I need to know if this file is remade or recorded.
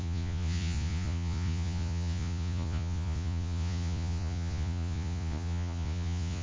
remade